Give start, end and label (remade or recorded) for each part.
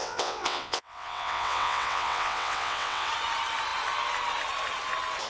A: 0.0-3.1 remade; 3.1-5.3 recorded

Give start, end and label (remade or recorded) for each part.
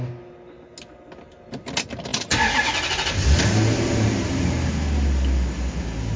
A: 0.0-6.2 recorded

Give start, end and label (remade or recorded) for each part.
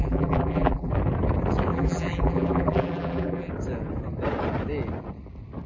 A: 0.0-0.9 remade; 0.9-1.7 recorded; 1.7-3.5 remade; 3.5-5.7 recorded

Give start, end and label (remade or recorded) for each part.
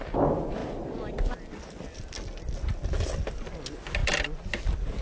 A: 0.0-5.0 recorded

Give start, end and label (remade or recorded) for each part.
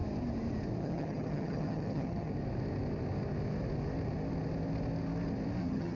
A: 0.0-0.8 recorded; 0.8-2.3 remade; 2.3-5.6 recorded; 5.6-6.0 remade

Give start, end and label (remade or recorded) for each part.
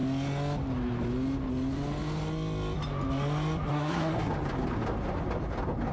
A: 0.0-3.7 recorded; 3.7-4.3 remade; 4.3-5.9 recorded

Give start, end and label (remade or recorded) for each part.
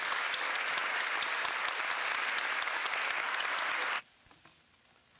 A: 0.0-5.2 recorded